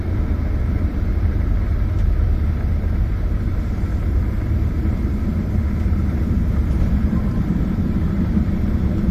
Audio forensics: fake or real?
fake